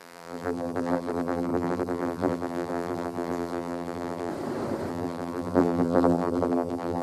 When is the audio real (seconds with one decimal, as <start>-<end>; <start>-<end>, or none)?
4.3-4.9